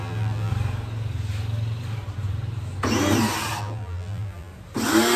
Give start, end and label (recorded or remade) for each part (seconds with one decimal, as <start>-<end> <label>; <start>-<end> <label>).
0.0-0.5 remade; 0.5-3.6 recorded; 3.6-4.5 remade; 4.5-5.2 recorded